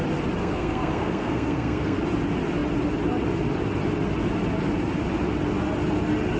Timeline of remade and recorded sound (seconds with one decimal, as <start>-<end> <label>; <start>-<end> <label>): 0.0-0.4 recorded; 0.4-2.0 remade; 2.0-6.4 recorded